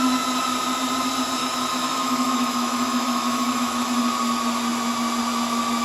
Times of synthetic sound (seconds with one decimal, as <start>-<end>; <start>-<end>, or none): 1.4-3.9